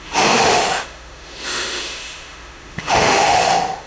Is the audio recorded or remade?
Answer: remade